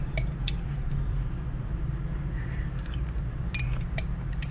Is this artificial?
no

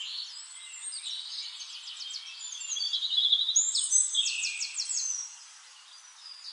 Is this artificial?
no